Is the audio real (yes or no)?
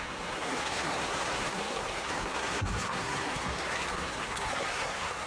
no